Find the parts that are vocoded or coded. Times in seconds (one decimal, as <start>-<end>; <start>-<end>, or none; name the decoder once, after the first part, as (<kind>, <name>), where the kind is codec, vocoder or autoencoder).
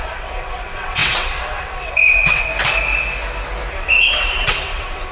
0.0-2.5 (vocoder, WaveNeXt); 3.7-5.1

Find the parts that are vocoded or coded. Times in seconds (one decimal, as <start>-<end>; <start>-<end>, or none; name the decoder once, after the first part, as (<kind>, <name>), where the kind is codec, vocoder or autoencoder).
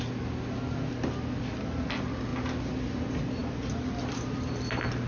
none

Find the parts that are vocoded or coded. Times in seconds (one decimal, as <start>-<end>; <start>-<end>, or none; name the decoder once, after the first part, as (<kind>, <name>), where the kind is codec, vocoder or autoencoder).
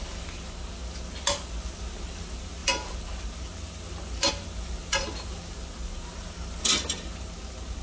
none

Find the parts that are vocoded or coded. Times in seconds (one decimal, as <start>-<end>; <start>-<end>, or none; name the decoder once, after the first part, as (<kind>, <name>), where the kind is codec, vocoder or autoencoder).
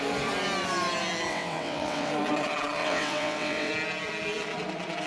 1.3-2.1 (vocoder, WaveNeXt); 2.8-3.7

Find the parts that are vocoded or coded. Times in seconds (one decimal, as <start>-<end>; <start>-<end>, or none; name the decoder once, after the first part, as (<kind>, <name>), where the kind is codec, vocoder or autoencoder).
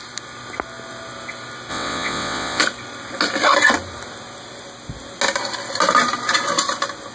1.7-2.6 (vocoder, WaveNeXt)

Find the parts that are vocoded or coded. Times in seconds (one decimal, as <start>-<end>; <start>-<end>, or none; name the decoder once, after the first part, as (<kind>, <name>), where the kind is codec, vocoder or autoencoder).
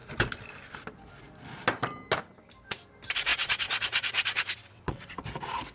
3.3-5.2 (vocoder, WaveNeXt)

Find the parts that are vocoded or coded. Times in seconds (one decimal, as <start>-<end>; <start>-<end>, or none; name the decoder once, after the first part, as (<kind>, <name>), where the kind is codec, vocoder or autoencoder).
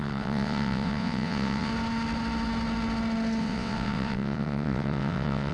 0.0-1.7 (vocoder, WaveNeXt); 3.4-5.5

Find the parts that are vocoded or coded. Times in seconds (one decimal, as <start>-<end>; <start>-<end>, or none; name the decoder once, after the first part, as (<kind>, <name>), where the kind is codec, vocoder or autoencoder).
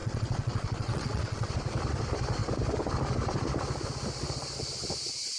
0.0-1.5 (vocoder, WaveNeXt)